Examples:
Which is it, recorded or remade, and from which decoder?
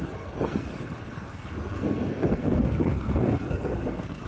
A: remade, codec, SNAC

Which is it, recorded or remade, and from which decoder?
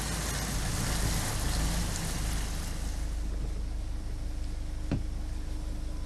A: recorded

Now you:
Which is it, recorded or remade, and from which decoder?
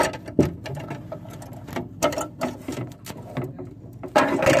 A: recorded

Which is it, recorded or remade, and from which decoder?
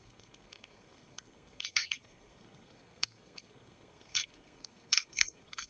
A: remade, codec, SNAC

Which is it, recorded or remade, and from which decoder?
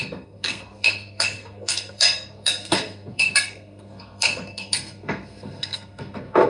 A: remade, codec, SNAC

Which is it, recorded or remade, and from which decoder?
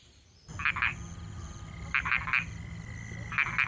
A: recorded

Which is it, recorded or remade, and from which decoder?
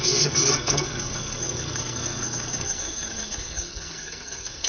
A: remade, codec, SNAC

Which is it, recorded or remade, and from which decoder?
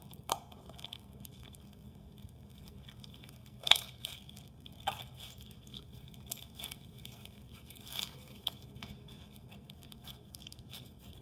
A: remade, codec, SNAC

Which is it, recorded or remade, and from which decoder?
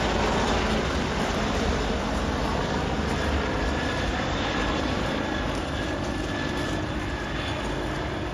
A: recorded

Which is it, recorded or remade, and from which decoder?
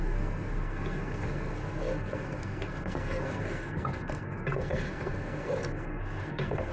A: remade, codec, SNAC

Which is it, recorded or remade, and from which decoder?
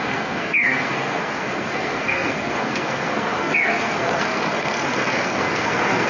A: remade, codec, SNAC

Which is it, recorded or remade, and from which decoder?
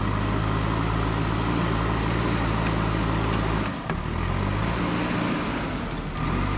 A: recorded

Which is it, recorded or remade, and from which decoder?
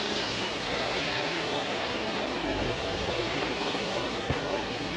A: remade, codec, SNAC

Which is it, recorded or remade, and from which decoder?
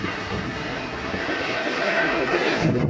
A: remade, codec, SNAC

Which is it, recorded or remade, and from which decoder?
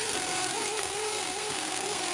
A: remade, codec, SNAC